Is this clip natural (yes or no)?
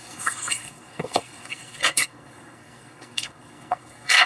no